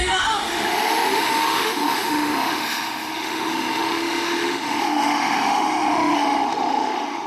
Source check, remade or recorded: remade